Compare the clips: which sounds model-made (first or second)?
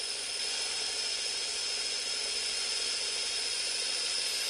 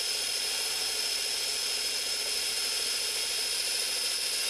first